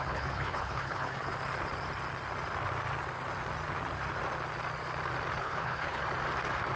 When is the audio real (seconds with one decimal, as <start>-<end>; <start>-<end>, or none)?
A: 1.3-5.4; 6.0-6.8